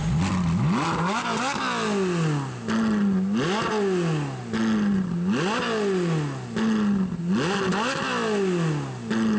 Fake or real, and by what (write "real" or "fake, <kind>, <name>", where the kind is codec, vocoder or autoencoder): real